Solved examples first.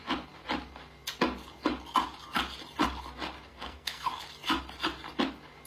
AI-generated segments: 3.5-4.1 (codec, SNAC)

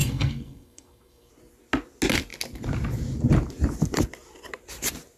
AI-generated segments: 0.0-1.3 (codec, SNAC)

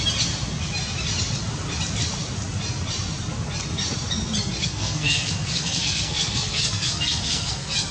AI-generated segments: 4.6-7.9 (codec, SNAC)

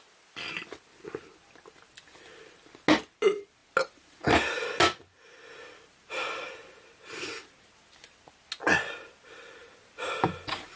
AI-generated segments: none